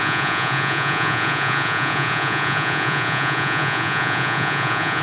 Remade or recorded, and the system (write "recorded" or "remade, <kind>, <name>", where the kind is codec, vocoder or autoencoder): remade, vocoder, Vocos